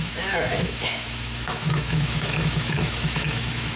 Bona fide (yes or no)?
no